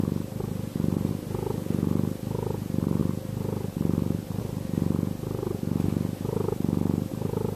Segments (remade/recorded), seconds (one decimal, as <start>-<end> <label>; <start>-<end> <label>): 0.0-7.6 recorded